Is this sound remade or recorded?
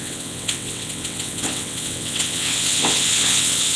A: remade